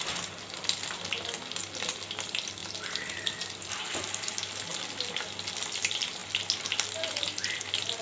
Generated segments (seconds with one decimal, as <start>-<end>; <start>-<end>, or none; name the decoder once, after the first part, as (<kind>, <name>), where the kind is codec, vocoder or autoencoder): none